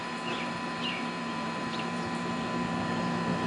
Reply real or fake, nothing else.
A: fake